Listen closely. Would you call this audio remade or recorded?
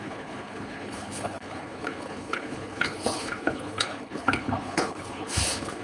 remade